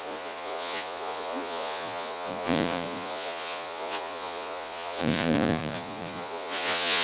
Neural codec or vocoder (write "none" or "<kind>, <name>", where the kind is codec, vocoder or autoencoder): vocoder, Vocos